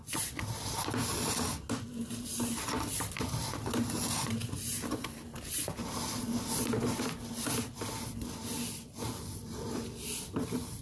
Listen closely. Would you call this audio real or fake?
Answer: real